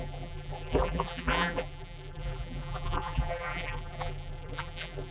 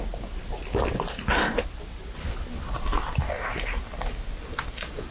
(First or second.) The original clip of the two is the second